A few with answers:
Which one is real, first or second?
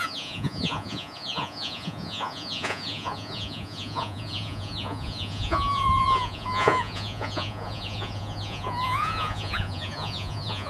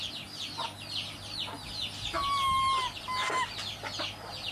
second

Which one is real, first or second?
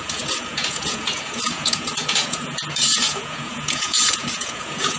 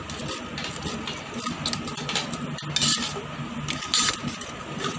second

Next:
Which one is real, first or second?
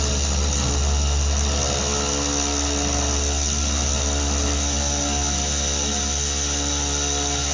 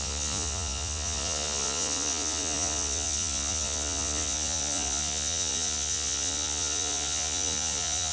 first